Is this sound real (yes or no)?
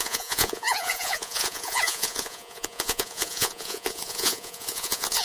no